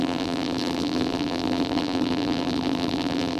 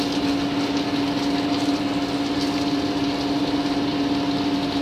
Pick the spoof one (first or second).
first